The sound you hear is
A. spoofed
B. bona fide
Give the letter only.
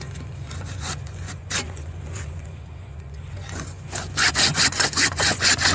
A